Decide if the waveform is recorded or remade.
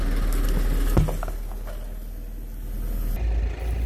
recorded